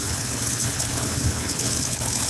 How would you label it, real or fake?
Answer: fake